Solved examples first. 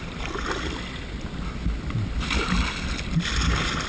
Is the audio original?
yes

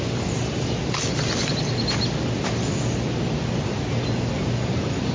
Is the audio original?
yes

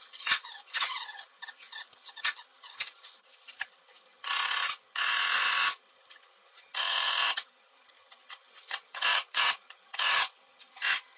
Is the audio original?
no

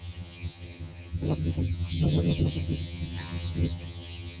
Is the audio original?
no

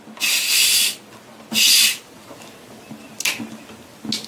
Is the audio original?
yes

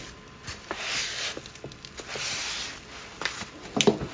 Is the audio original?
yes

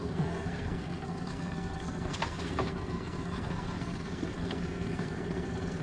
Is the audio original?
no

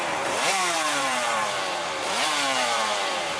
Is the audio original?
no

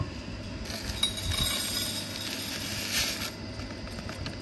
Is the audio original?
yes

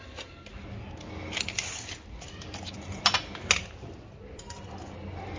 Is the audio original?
yes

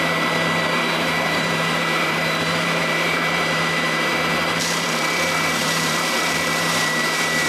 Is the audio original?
no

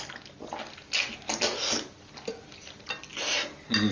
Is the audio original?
yes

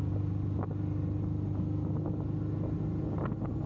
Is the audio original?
yes